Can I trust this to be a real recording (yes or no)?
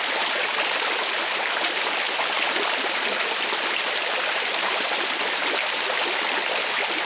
yes